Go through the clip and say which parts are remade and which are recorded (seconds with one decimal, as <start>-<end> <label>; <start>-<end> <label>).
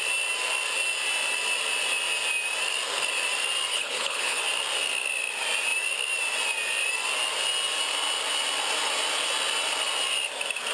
0.0-3.7 recorded; 3.7-4.4 remade; 4.4-10.7 recorded